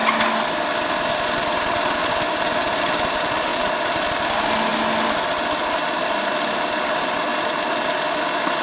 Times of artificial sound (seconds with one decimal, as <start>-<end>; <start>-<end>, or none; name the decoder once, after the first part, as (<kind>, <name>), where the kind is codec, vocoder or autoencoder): none